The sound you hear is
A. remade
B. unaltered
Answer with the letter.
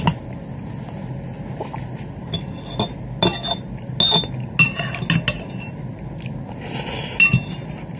B